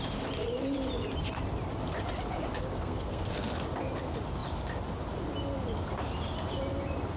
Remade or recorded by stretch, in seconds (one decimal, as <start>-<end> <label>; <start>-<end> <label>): 0.0-2.7 recorded; 2.7-3.5 remade; 3.5-7.2 recorded